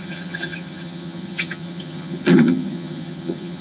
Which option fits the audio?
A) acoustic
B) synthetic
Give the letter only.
B